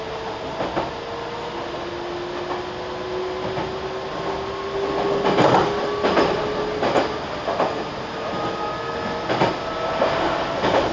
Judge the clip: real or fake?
real